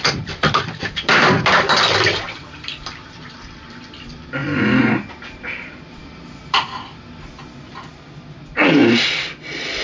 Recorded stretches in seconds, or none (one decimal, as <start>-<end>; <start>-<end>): 4.4-5.1; 8.8-9.8